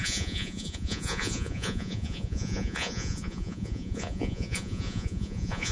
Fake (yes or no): yes